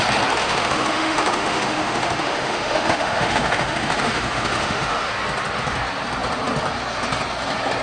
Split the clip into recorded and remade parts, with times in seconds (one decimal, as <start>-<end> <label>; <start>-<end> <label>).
0.0-0.4 recorded; 0.4-5.1 remade; 5.1-7.8 recorded